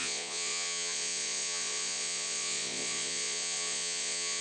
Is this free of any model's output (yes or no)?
no